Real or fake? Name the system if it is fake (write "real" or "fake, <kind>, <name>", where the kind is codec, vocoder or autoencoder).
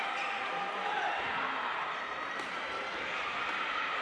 fake, vocoder, BigVGAN v2